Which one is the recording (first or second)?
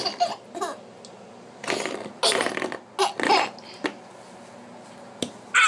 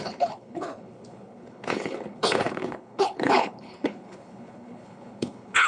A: first